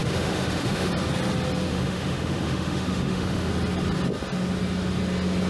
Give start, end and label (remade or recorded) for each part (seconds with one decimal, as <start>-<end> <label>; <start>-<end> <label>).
0.0-0.9 remade; 0.9-1.7 recorded; 1.7-3.5 remade; 3.5-5.5 recorded